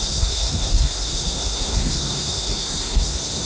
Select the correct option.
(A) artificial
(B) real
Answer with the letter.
A